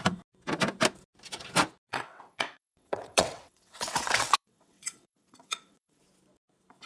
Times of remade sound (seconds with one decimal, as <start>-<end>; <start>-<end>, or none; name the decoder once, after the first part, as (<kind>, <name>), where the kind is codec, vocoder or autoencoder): 1.9-6.0 (vocoder, WaveNeXt)